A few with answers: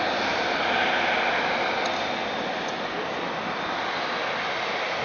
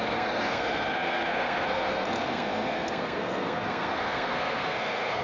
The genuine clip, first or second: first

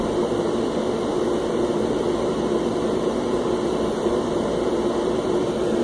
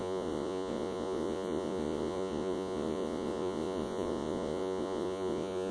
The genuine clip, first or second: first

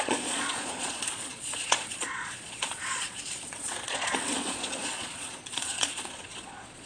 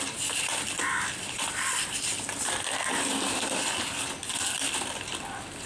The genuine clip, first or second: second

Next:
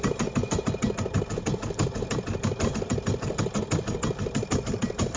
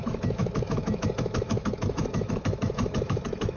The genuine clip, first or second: first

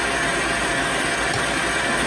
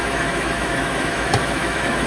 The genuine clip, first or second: first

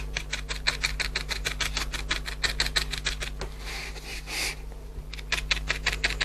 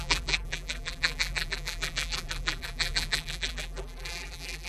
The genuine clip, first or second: first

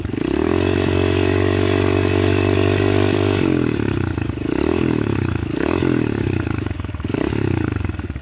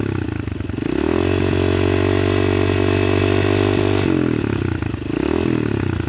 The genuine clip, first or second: second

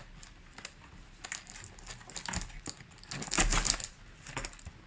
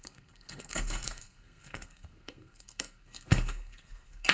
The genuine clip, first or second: first